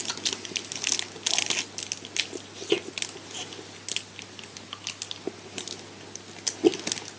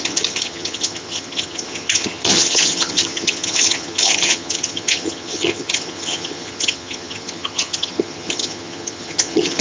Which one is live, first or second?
first